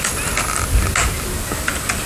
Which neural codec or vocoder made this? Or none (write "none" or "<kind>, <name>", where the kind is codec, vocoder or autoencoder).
none